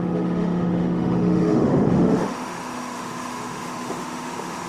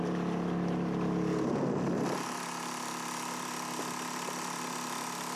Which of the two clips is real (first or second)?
second